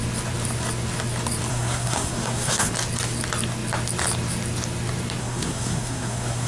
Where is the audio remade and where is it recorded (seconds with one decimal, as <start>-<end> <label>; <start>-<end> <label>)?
0.0-1.5 recorded; 1.5-2.7 remade; 2.7-5.2 recorded; 5.2-6.5 remade